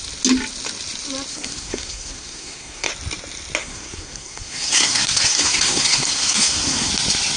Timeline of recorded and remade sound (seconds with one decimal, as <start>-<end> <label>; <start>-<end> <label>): 0.0-1.3 recorded; 1.3-2.9 remade; 2.9-3.6 recorded; 3.6-6.9 remade; 6.9-7.4 recorded